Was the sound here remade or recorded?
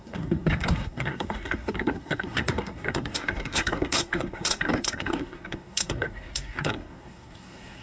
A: remade